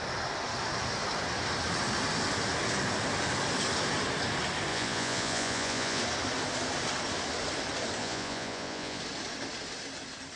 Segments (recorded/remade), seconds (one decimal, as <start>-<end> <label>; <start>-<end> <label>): 0.0-4.7 recorded; 4.7-6.0 remade; 6.0-8.0 recorded; 8.0-9.0 remade; 9.0-10.4 recorded